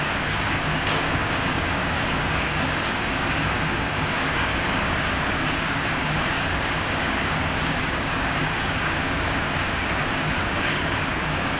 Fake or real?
fake